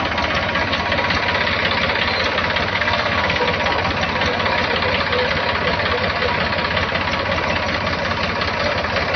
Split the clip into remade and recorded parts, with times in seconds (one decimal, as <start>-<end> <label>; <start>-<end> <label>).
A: 0.0-2.7 recorded; 2.7-3.4 remade; 3.4-9.2 recorded